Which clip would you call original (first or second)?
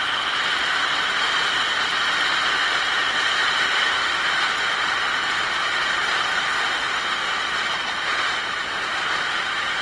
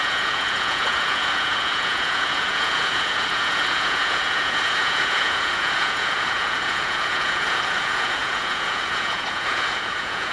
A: first